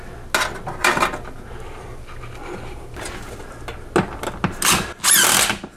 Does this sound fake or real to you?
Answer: real